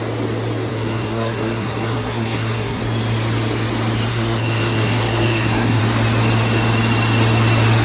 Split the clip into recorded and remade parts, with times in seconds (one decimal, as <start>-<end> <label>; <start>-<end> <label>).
0.0-0.7 recorded; 0.7-2.8 remade; 2.8-4.1 recorded; 4.1-5.8 remade; 5.8-7.8 recorded